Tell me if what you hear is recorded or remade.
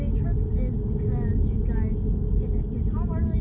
recorded